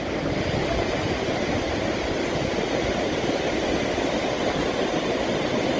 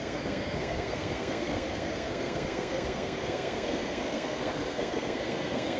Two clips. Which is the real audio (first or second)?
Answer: first